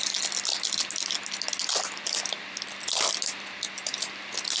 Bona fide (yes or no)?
yes